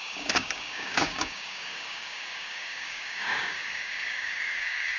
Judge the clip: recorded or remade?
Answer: remade